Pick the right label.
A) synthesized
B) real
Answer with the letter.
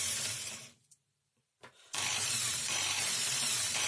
A